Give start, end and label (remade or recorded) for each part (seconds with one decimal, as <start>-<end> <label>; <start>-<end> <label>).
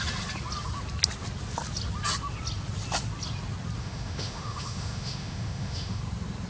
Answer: 0.0-3.8 recorded; 3.8-6.0 remade; 6.0-6.5 recorded